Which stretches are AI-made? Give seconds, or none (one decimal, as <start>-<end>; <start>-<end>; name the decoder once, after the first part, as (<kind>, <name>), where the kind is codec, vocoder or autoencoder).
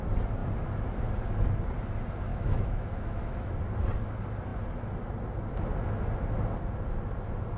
2.3-3.5 (autoencoder, DAC-VAE)